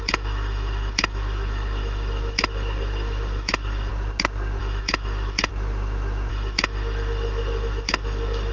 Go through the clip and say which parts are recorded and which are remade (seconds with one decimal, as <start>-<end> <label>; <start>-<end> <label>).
0.0-3.9 remade; 3.9-4.6 recorded; 4.6-5.5 remade; 5.5-6.3 recorded; 6.3-8.5 remade